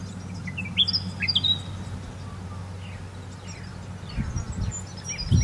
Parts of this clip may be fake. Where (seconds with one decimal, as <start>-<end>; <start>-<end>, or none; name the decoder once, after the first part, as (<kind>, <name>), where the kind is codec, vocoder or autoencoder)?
none